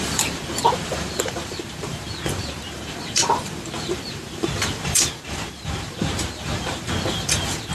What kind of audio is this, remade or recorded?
remade